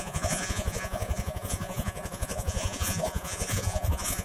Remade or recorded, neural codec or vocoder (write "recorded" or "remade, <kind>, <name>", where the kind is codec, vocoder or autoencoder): remade, vocoder, Vocos